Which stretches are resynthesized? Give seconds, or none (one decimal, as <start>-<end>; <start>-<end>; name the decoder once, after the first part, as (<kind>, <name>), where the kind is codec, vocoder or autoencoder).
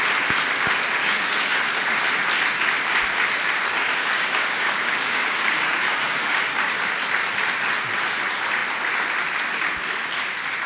1.0-1.6 (codec, DAC); 4.0-6.7